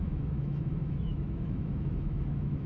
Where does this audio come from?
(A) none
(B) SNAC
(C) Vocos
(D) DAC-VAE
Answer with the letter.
D